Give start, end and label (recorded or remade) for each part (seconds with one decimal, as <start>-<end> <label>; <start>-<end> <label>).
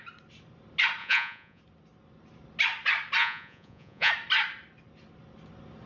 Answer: 0.0-1.0 recorded; 1.0-1.6 remade; 1.6-3.2 recorded; 3.2-4.1 remade; 4.1-5.9 recorded